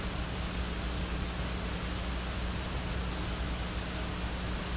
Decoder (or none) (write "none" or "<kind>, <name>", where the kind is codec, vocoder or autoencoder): none